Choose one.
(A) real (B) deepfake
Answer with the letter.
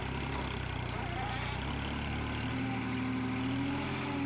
A